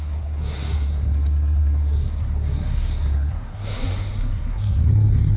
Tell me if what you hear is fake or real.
fake